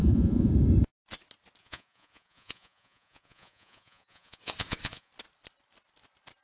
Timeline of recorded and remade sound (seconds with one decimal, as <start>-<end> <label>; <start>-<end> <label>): 0.0-0.5 remade; 0.5-1.6 recorded; 1.6-5.1 remade; 5.1-6.4 recorded